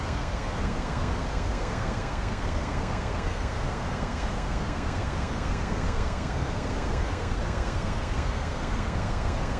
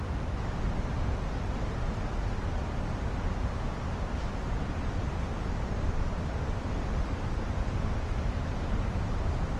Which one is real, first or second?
second